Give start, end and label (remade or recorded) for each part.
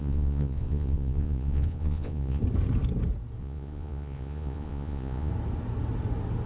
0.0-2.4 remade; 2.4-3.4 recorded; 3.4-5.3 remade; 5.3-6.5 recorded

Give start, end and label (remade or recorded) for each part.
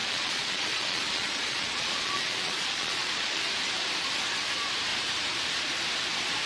0.0-3.4 remade; 3.4-6.5 recorded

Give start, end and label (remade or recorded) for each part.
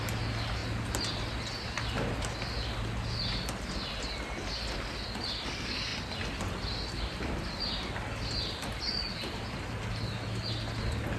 0.0-11.2 recorded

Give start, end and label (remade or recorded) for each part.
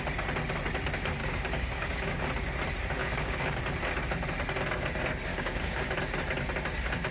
0.0-1.2 recorded; 1.2-2.2 remade; 2.2-3.0 recorded; 3.0-3.6 remade; 3.6-5.3 recorded; 5.3-5.9 remade; 5.9-7.1 recorded